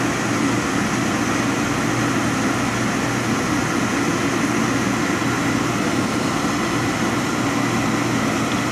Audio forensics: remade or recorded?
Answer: recorded